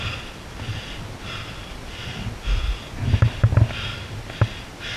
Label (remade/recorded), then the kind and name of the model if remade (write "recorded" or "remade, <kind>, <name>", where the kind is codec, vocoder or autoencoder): recorded